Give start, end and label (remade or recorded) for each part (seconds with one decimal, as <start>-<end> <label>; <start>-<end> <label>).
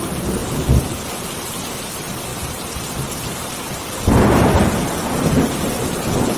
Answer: 0.0-0.4 recorded; 0.4-1.0 remade; 1.0-2.3 recorded; 2.3-4.0 remade; 4.0-6.4 recorded